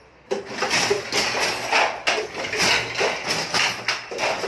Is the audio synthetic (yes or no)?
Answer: no